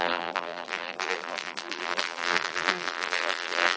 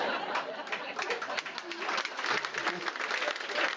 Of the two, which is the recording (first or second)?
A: second